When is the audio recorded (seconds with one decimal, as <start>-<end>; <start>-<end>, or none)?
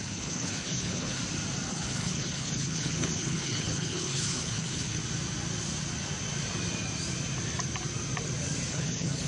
1.2-1.7; 5.0-8.7